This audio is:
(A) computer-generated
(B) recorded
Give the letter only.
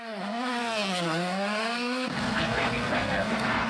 A